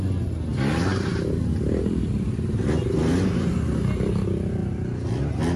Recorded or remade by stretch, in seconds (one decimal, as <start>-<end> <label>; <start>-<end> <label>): 0.0-5.6 recorded